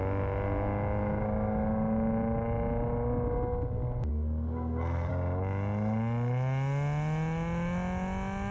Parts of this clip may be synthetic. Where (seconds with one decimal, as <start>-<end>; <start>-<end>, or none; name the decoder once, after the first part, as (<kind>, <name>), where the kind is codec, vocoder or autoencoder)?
4.1-5.1 (codec, SNAC)